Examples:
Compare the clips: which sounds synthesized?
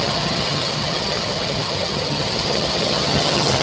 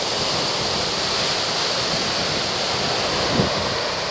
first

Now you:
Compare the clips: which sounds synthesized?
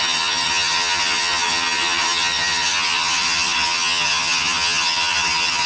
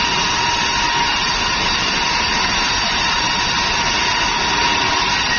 first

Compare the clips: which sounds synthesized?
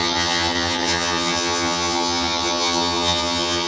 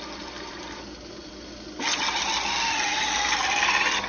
first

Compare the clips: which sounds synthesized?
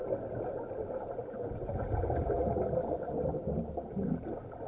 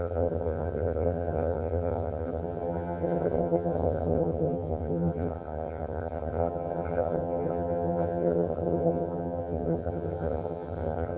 second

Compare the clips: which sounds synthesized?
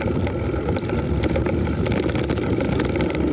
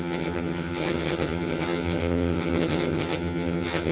second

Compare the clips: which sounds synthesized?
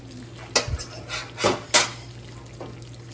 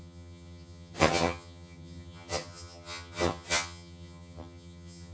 second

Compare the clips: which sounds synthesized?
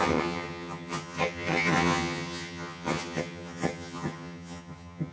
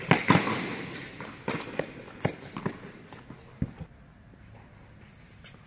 first